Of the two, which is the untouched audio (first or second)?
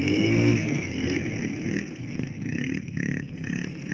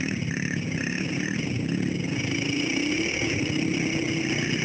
second